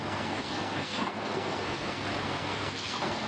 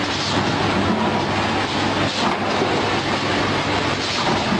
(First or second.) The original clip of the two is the second